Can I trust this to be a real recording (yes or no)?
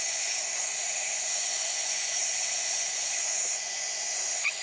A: no